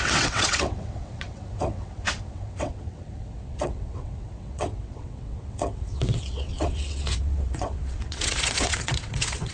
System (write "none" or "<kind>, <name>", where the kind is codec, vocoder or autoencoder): vocoder, WaveNeXt